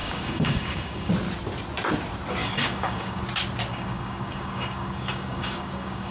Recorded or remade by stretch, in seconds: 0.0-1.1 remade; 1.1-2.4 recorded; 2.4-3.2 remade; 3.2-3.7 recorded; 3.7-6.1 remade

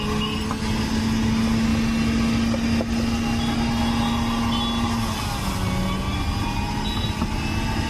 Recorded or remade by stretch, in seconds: 0.0-7.9 recorded

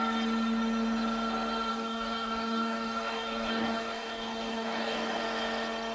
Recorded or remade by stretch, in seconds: 0.0-1.7 recorded; 1.7-5.2 remade; 5.2-5.9 recorded

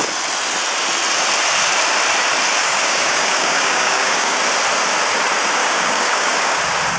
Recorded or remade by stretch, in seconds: 0.0-2.6 recorded; 2.6-4.4 remade; 4.4-5.6 recorded; 5.6-6.6 remade; 6.6-7.0 recorded

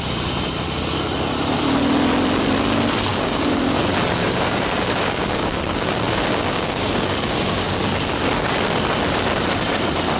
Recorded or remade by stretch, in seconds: 0.0-3.1 recorded; 3.1-3.8 remade; 3.8-4.2 recorded; 4.2-7.8 remade; 7.8-10.2 recorded

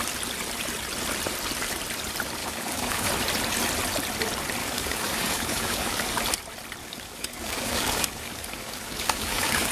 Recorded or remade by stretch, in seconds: 0.0-2.4 recorded; 2.4-3.1 remade; 3.1-4.6 recorded; 4.6-6.2 remade; 6.2-6.8 recorded; 6.8-9.7 remade

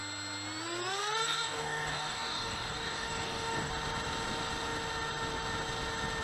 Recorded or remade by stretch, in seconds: 0.0-1.2 recorded; 1.2-3.7 remade; 3.7-6.2 recorded

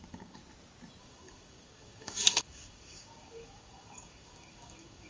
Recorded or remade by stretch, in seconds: 0.0-0.4 remade; 0.4-1.0 recorded; 1.0-5.1 remade